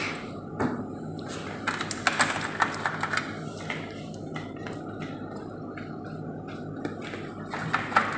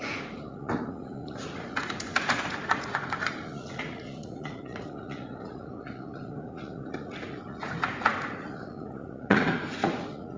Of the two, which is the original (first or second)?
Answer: first